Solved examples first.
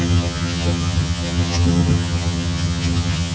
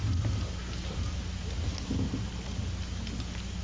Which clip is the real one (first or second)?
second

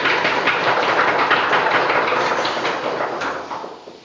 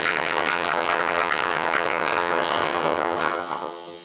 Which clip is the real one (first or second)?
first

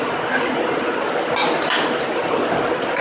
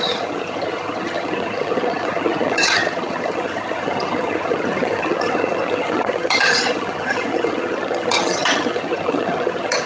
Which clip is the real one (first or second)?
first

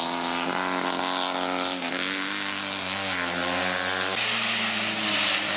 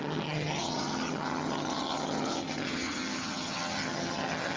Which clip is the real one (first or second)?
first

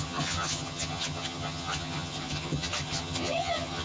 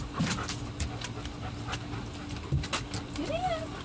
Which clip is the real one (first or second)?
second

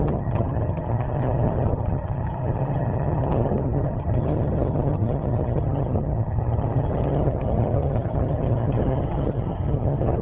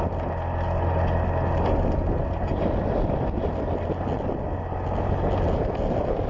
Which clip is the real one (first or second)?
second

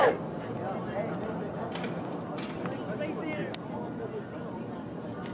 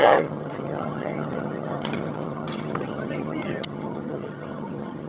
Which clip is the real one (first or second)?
first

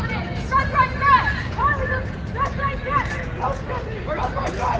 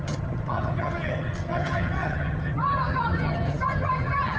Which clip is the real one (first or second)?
first